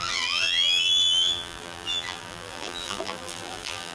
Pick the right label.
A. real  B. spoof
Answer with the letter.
B